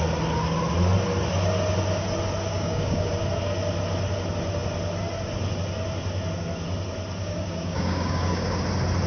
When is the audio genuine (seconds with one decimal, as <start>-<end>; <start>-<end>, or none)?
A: 0.0-2.5; 3.1-7.2; 8.6-9.1

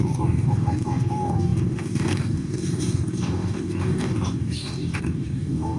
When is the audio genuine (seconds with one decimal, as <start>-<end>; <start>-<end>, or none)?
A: none

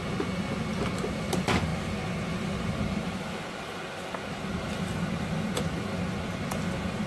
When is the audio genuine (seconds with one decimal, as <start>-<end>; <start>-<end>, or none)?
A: 0.0-7.1

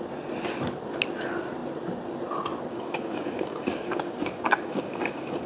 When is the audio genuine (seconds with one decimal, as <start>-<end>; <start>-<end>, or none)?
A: 0.0-2.7

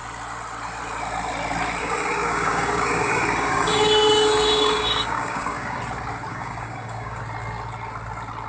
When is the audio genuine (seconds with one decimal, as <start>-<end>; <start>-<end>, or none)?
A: 0.0-1.8; 5.8-6.3; 7.2-8.5